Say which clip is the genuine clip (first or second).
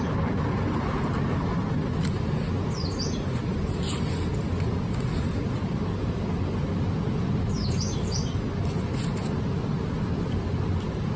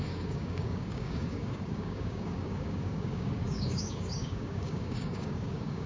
first